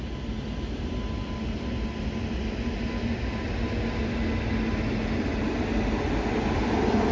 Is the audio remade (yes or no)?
no